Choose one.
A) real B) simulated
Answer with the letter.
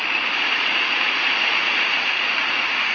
B